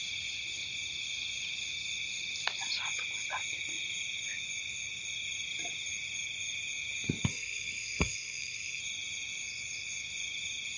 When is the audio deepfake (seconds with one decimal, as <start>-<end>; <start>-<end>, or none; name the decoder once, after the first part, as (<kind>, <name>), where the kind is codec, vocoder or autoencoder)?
7.3-8.8 (codec, SNAC)